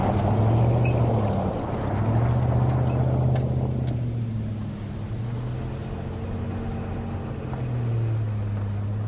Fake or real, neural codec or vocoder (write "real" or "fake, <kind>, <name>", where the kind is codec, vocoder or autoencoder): real